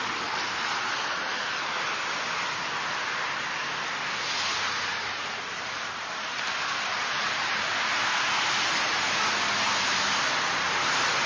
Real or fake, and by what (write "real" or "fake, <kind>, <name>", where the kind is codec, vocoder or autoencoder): real